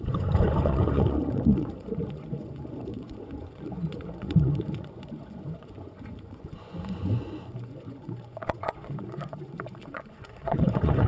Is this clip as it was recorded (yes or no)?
no